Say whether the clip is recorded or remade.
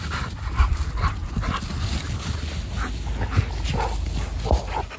recorded